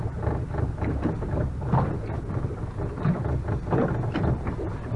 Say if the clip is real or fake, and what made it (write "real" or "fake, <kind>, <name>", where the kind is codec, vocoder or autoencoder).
real